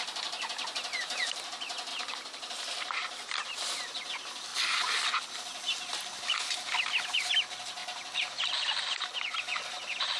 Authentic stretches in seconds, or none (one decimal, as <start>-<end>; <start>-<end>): 0.0-1.9; 4.1-4.5; 5.1-7.8; 9.0-10.2